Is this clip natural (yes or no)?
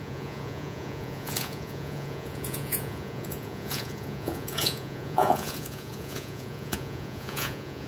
no